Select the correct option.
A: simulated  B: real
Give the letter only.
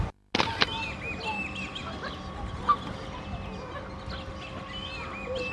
B